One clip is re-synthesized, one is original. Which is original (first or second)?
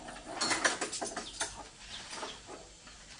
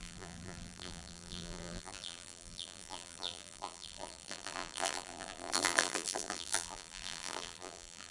first